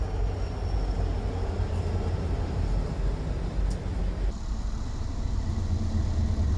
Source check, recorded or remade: recorded